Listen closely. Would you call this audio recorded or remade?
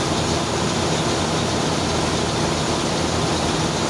recorded